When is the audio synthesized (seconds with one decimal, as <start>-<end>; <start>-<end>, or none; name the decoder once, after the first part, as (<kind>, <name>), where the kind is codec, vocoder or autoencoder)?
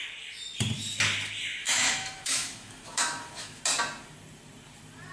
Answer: 1.6-3.6 (autoencoder, DAC-VAE)